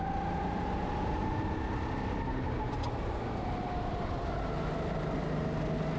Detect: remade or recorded recorded